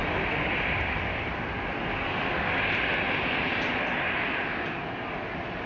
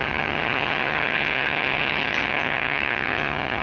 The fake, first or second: second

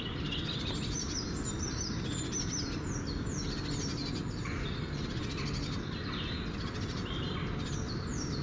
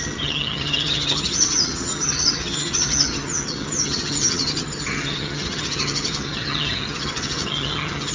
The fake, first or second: second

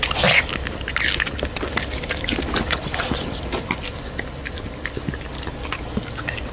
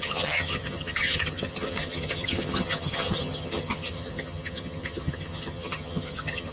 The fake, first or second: second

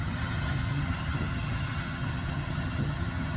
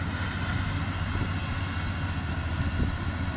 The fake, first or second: first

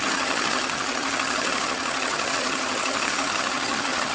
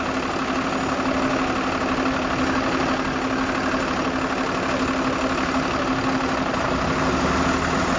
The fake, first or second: first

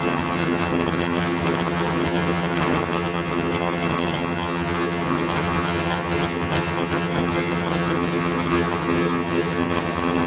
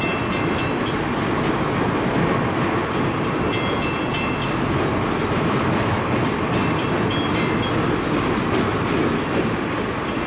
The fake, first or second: first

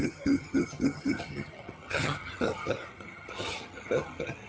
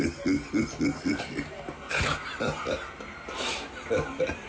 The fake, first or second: first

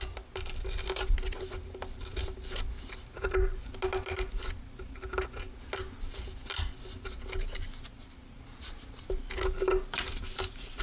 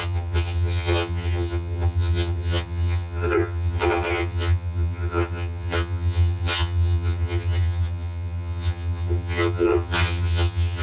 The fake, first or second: second